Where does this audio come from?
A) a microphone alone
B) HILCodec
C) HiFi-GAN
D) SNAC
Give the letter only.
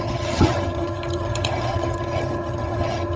C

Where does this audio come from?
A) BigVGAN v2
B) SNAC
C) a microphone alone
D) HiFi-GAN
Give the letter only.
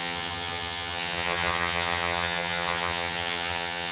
D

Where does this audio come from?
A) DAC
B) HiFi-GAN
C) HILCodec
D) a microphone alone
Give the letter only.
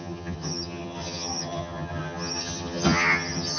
B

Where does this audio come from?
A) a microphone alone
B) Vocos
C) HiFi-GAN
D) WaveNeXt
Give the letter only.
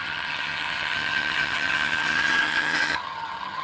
C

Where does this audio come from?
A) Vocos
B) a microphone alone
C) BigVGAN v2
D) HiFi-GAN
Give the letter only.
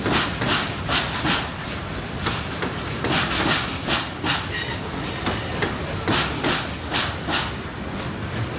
B